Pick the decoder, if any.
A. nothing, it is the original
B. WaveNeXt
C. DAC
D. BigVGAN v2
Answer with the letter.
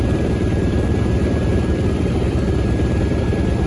D